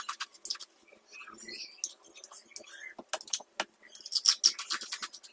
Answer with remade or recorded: recorded